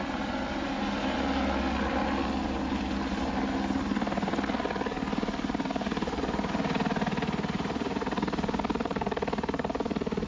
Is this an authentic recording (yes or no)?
yes